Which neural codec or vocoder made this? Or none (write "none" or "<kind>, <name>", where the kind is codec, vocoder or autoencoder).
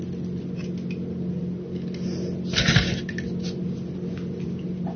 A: none